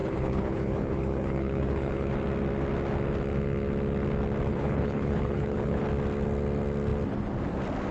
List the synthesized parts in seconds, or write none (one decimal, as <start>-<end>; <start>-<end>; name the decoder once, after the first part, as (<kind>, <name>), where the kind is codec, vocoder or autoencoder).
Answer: 0.0-2.1 (codec, HILCodec); 4.5-5.8